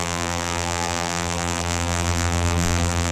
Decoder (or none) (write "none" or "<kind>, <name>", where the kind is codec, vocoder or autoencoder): vocoder, BigVGAN v2